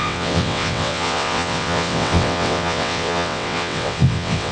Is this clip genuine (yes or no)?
no